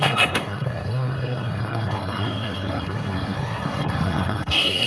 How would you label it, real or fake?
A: fake